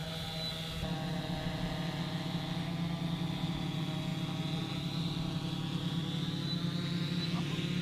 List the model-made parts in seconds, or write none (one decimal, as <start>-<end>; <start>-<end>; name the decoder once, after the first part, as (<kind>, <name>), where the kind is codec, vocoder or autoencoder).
none